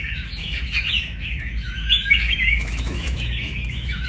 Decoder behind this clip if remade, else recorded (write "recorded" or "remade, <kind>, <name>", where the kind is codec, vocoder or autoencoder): remade, autoencoder, DAC-VAE